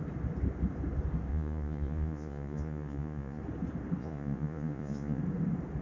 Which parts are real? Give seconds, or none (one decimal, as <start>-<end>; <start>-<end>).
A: 0.0-1.3; 3.4-4.0; 5.2-5.8